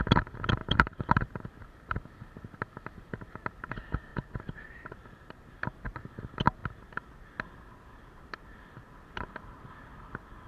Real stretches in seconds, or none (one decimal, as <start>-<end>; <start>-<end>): 0.0-0.6; 1.5-4.1; 5.5-10.5